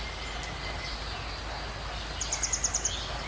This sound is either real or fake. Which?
real